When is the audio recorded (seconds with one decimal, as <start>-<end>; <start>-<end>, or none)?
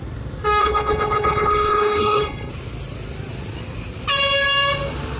0.0-0.6; 2.5-5.2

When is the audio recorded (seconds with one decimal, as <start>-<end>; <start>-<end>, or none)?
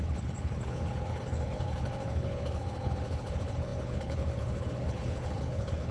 none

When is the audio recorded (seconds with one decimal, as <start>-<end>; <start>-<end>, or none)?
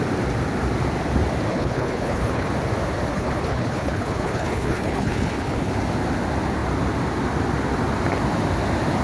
0.0-1.5; 2.5-3.1; 5.7-9.0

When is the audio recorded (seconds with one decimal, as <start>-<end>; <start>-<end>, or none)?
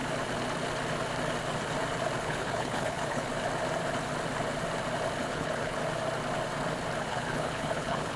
0.0-2.2; 3.3-5.2; 5.8-7.1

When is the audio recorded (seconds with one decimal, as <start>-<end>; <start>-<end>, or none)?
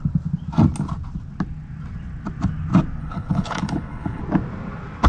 0.0-3.0; 4.2-5.1